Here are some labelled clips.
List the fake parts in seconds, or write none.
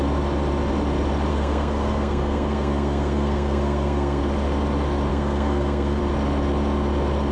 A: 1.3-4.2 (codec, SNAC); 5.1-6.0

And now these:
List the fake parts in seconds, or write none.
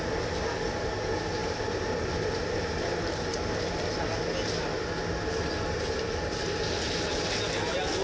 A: 1.4-3.9 (vocoder, BigVGAN v2)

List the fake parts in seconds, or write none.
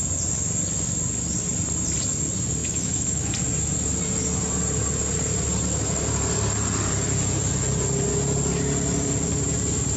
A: 2.6-3.3 (autoencoder, DAC-VAE)